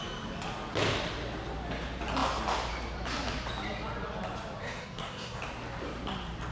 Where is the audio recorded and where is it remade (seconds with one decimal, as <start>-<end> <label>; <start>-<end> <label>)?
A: 0.0-4.6 recorded; 4.6-5.4 remade; 5.4-6.5 recorded